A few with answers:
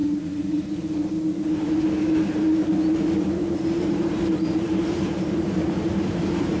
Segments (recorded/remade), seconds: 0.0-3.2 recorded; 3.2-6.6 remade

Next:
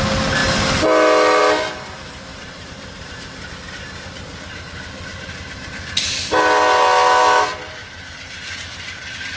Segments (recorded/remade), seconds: 0.0-2.3 recorded; 2.3-5.7 remade; 5.7-7.8 recorded; 7.8-9.4 remade

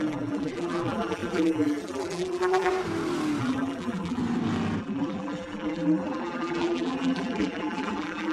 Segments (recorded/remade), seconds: 0.0-2.7 remade; 2.7-3.4 recorded; 3.4-4.2 remade; 4.2-4.8 recorded; 4.8-8.3 remade

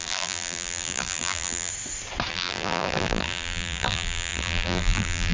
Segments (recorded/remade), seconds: 0.0-1.7 remade; 1.7-2.3 recorded; 2.3-5.3 remade

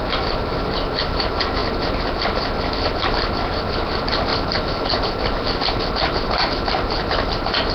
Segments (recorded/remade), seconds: 0.0-4.3 remade; 4.3-5.0 recorded; 5.0-5.6 remade; 5.6-6.2 recorded; 6.2-7.7 remade

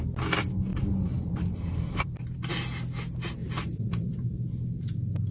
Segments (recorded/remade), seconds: 0.0-0.7 recorded; 0.7-2.5 remade; 2.5-3.4 recorded; 3.4-4.1 remade; 4.1-5.3 recorded